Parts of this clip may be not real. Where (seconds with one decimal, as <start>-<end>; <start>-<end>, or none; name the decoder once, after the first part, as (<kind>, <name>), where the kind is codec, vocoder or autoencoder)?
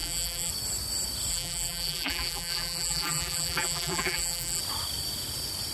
0.0-0.5 (vocoder, BigVGAN v2); 1.3-4.6